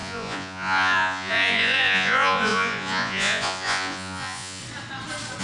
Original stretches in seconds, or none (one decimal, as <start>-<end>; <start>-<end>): 4.6-5.4